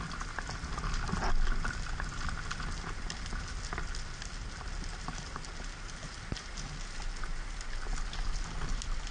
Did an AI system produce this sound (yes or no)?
no